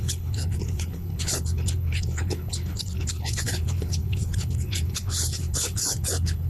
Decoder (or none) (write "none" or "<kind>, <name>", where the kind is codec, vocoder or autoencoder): codec, HILCodec